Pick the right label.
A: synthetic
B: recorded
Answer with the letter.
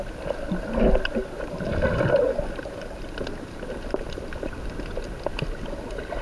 B